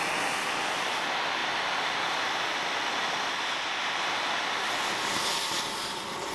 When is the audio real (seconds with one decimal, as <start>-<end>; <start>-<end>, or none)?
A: 0.0-6.3